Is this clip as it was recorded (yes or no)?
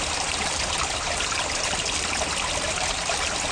yes